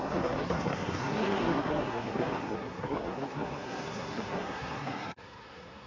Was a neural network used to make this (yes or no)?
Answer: yes